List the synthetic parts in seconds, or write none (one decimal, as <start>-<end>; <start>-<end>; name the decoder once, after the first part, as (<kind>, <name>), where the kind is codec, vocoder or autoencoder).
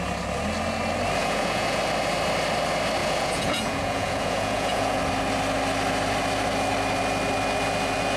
1.2-1.8 (vocoder, Vocos); 3.0-5.0